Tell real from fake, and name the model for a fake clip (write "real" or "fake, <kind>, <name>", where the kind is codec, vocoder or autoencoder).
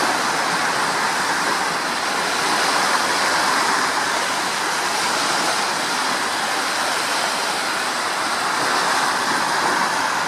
real